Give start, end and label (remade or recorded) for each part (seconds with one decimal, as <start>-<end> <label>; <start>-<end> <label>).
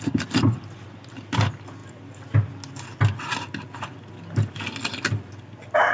0.0-5.9 recorded